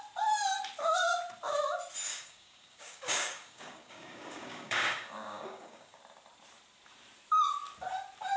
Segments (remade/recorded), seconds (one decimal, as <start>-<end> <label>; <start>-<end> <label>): 0.0-2.1 recorded; 2.1-6.0 remade; 6.0-8.4 recorded